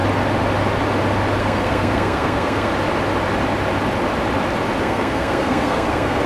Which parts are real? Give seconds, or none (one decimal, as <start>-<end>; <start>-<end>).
0.0-1.4; 2.7-4.8